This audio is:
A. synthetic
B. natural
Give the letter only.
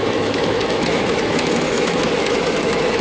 A